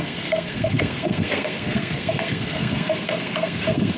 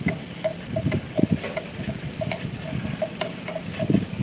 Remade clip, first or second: first